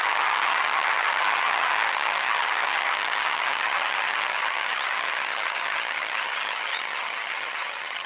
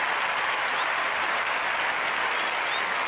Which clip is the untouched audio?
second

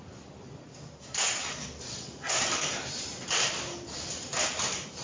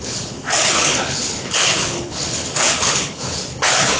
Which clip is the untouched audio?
first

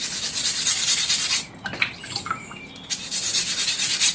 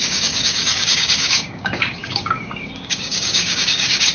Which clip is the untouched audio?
first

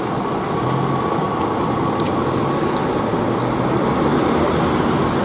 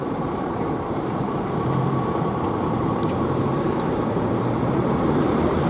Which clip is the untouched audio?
first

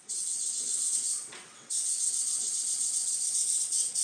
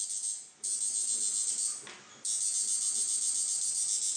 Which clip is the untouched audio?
second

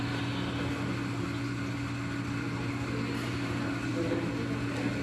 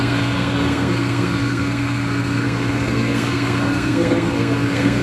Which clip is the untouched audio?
first